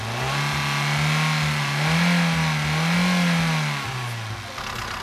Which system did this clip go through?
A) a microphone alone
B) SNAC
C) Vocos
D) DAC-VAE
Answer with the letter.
A